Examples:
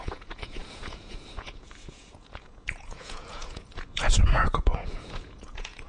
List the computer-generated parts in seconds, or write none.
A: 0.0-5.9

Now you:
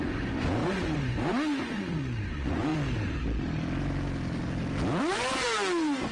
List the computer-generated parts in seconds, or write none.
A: 0.0-2.7; 5.0-6.1

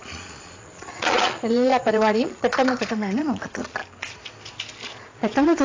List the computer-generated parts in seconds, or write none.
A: 0.0-3.8; 5.0-5.6